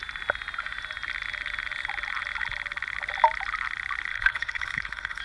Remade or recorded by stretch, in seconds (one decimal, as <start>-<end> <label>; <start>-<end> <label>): 0.0-4.1 recorded; 4.1-5.2 remade